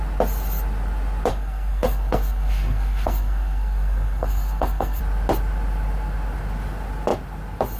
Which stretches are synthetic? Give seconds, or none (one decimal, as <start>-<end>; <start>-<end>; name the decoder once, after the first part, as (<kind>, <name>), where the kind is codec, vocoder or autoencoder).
1.3-5.0 (codec, SNAC)